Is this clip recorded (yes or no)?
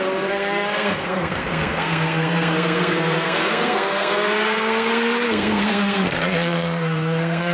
no